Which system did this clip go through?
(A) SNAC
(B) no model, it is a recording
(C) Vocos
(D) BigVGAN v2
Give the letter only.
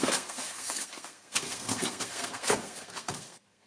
A